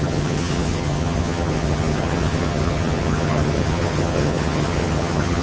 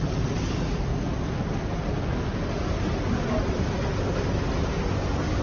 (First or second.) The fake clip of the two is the first